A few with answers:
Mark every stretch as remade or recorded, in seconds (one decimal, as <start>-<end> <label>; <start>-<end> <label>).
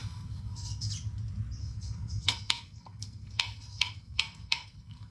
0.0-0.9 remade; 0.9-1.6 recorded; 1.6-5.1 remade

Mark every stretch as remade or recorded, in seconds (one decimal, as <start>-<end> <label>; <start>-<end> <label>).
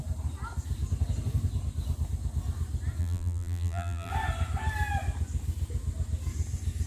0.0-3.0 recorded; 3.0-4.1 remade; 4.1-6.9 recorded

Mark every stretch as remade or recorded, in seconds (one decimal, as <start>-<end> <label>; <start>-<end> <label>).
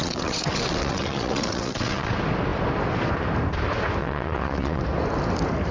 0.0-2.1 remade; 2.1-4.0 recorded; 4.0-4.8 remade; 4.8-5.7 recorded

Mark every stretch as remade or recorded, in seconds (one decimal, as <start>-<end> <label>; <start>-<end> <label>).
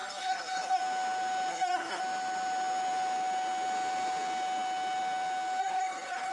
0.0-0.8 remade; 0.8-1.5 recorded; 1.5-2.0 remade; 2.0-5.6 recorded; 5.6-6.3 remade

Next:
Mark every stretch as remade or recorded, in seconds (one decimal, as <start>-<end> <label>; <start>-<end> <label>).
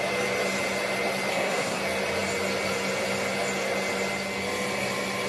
0.0-1.3 recorded; 1.3-1.8 remade; 1.8-5.3 recorded